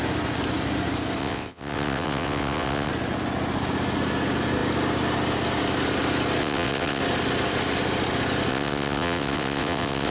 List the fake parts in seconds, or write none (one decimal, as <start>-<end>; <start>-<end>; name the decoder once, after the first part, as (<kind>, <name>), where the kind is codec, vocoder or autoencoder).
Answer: 1.2-2.9 (vocoder, WaveNeXt); 6.4-7.0; 8.5-10.1